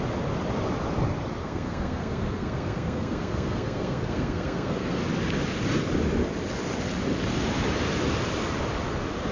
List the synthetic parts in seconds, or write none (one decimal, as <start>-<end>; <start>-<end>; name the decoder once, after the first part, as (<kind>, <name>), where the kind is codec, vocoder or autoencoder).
1.4-5.0 (codec, SNAC)